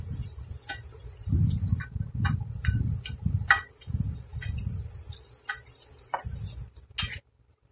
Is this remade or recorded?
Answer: recorded